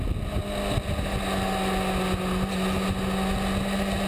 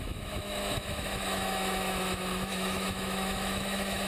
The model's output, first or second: second